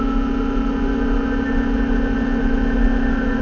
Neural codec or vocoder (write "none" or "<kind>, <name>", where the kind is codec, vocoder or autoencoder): none